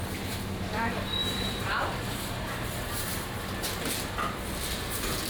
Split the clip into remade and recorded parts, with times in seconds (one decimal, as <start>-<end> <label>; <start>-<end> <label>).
0.0-1.2 recorded; 1.2-3.5 remade; 3.5-5.3 recorded